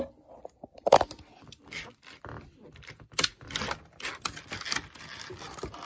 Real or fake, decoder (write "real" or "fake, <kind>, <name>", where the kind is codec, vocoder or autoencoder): real